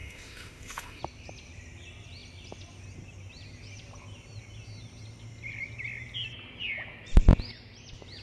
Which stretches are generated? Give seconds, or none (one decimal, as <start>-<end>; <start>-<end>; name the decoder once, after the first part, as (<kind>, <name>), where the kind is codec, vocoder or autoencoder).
0.0-1.0 (autoencoder, DAC-VAE)